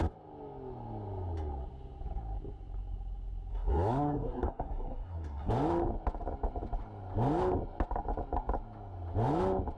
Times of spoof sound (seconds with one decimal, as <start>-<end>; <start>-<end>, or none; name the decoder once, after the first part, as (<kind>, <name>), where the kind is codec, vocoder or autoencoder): 3.5-5.5 (codec, SNAC)